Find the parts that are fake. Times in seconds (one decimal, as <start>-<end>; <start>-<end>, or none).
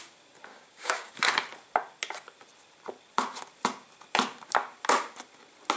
0.5-1.1